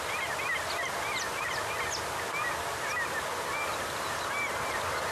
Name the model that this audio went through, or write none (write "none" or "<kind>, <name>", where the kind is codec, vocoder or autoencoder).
none